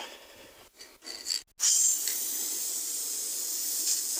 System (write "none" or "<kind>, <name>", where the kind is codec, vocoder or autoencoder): none